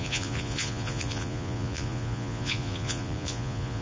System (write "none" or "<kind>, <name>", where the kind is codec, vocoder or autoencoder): vocoder, Vocos